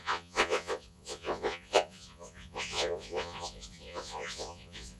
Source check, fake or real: fake